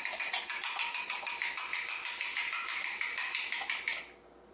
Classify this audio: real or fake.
real